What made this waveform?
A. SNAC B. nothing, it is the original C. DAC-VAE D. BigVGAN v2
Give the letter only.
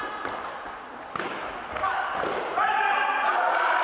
B